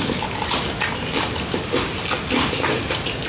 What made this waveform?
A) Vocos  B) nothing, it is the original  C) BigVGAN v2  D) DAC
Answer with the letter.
B